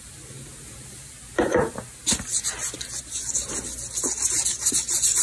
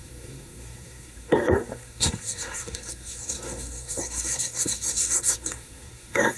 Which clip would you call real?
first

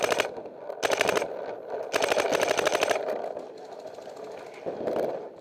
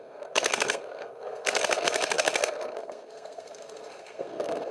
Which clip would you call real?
first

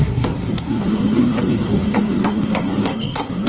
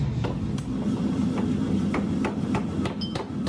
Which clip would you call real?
second